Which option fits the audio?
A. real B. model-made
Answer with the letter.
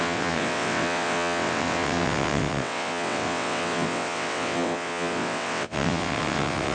B